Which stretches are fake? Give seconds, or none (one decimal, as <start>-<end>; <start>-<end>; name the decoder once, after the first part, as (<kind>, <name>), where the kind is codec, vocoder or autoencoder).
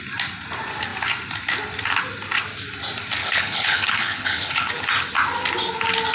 3.2-4.7 (codec, HILCodec)